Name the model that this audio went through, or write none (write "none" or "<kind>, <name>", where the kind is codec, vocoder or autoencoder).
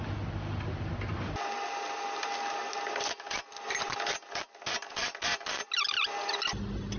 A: none